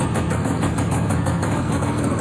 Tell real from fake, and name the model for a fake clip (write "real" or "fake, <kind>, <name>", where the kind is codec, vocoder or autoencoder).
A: fake, codec, SNAC